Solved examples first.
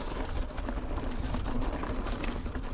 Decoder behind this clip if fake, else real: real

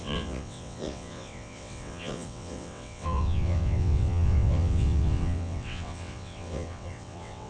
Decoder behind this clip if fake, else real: fake, vocoder, WaveNeXt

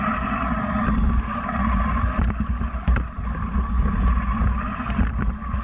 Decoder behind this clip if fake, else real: real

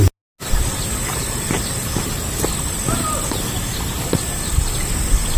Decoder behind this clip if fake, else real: real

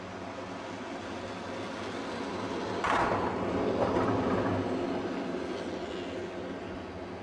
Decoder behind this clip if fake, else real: real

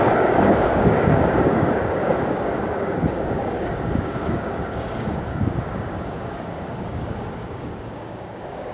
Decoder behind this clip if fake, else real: fake, codec, DAC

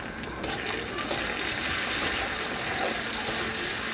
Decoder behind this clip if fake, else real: real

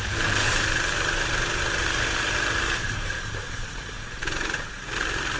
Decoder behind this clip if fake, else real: real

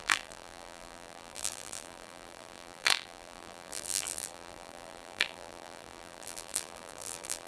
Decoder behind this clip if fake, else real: fake, vocoder, BigVGAN v2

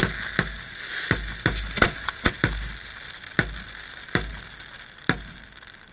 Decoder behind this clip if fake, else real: real